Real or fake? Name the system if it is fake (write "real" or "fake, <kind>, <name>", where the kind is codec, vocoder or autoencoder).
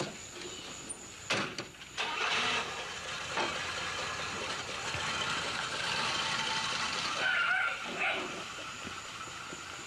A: real